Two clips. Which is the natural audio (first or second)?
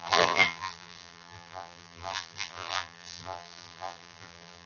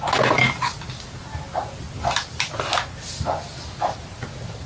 second